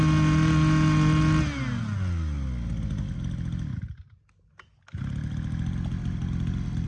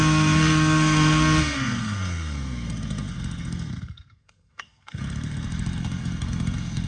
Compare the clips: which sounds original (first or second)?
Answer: first